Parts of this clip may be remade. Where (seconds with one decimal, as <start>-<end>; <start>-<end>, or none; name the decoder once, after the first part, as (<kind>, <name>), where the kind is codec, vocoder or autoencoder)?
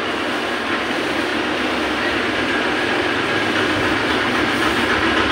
none